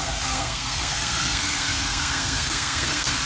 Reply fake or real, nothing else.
fake